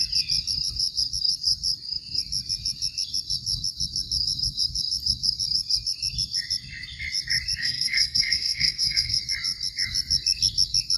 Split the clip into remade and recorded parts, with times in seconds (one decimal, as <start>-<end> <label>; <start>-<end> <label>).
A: 0.0-7.6 recorded; 7.6-9.2 remade; 9.2-11.0 recorded